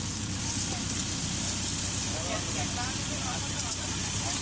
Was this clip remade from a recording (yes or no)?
no